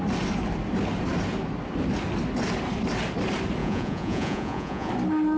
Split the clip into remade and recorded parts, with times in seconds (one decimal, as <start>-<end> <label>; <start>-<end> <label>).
0.0-3.6 recorded; 3.6-4.9 remade; 4.9-5.4 recorded